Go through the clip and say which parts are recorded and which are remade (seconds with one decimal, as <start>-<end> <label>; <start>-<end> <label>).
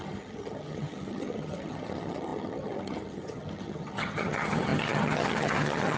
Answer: 0.0-6.0 remade